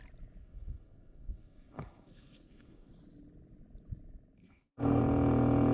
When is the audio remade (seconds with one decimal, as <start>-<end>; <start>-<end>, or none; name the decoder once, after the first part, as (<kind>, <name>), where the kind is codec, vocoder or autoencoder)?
0.4-2.9 (codec, SNAC); 4.4-5.0